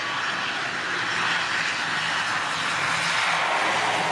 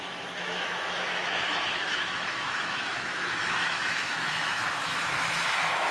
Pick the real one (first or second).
first